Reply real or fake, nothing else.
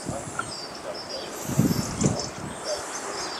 real